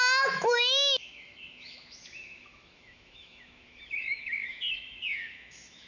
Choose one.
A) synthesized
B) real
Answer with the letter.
A